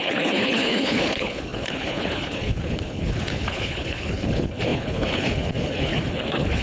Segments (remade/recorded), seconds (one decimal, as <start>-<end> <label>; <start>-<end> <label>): 0.0-6.6 remade

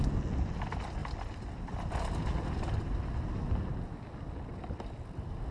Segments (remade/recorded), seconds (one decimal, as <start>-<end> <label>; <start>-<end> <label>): 0.0-5.5 recorded

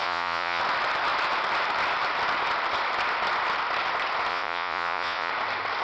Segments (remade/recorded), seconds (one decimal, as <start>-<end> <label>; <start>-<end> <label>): 0.0-0.6 remade; 0.6-4.3 recorded; 4.3-5.3 remade; 5.3-5.8 recorded

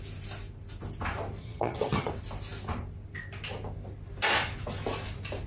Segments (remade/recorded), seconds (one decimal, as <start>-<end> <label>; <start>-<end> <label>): 0.0-1.4 recorded; 1.4-2.1 remade; 2.1-5.5 recorded

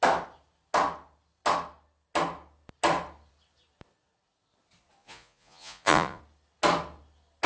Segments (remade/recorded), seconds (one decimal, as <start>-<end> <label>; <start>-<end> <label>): 0.0-5.0 recorded; 5.0-6.2 remade; 6.2-7.5 recorded

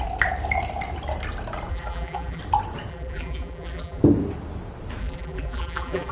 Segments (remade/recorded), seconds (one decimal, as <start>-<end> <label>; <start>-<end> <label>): 0.0-1.7 recorded; 1.7-2.4 remade; 2.4-2.9 recorded; 2.9-4.0 remade; 4.0-5.0 recorded; 5.0-6.1 remade

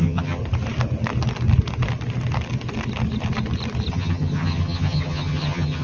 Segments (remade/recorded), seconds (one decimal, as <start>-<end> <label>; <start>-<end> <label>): 0.0-0.4 remade; 0.4-3.9 recorded; 3.9-5.8 remade

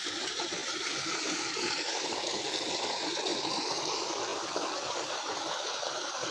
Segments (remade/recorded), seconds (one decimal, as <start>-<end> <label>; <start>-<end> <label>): 0.0-6.3 remade